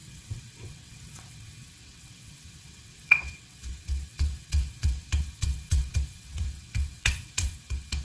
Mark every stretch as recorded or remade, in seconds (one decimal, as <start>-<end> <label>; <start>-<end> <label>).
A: 0.0-8.0 remade